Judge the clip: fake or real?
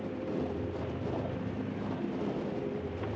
real